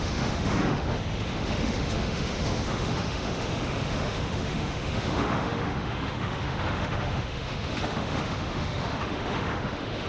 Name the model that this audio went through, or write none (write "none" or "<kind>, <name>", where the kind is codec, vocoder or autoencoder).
autoencoder, DAC-VAE